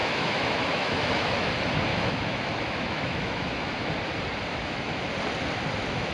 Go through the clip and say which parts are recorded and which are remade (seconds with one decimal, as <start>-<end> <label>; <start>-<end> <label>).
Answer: 0.0-1.5 remade; 1.5-1.9 recorded; 1.9-3.9 remade; 3.9-4.5 recorded; 4.5-5.0 remade; 5.0-6.1 recorded